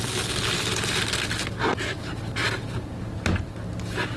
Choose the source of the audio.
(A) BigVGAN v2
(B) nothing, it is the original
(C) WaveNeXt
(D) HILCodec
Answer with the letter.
B